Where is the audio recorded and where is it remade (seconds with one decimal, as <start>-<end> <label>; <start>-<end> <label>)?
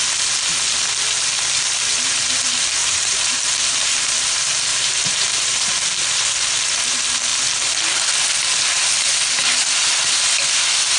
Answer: 0.0-2.8 recorded; 2.8-4.3 remade; 4.3-4.7 recorded; 4.7-5.5 remade; 5.5-11.0 recorded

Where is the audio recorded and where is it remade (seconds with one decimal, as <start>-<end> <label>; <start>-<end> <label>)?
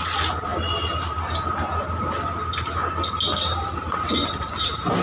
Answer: 0.0-5.0 recorded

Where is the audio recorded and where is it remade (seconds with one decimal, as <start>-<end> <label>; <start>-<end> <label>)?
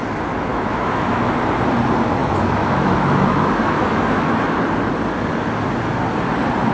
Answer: 0.0-0.5 recorded; 0.5-1.3 remade; 1.3-2.2 recorded; 2.2-4.6 remade; 4.6-6.7 recorded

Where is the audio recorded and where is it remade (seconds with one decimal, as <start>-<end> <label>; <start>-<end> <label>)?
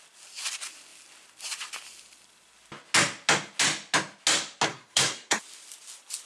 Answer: 0.0-4.7 recorded; 4.7-5.4 remade; 5.4-6.3 recorded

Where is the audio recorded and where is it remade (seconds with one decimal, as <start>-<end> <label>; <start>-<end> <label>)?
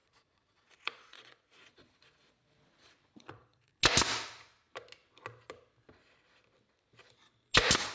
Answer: 0.0-3.7 remade; 3.7-7.9 recorded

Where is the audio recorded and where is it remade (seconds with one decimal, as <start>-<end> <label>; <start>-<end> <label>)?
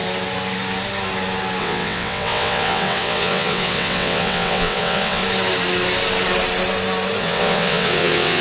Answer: 0.0-1.6 recorded; 1.6-5.2 remade; 5.2-7.2 recorded; 7.2-8.4 remade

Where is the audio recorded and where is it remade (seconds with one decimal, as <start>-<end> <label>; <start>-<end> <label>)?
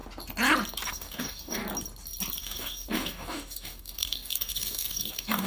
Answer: 0.0-0.9 recorded; 0.9-1.6 remade; 1.6-2.4 recorded; 2.4-5.5 remade